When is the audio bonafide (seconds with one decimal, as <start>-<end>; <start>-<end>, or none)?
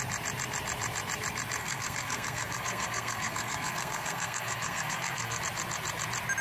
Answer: 0.0-1.6; 5.4-6.4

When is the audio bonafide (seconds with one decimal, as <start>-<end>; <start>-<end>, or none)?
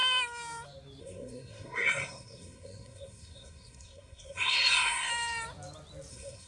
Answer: 0.0-1.0; 5.1-6.1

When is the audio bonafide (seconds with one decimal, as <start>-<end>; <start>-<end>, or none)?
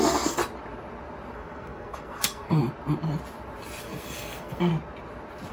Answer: 0.4-1.3; 2.6-3.8; 4.7-5.5